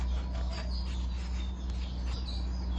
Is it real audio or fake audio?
real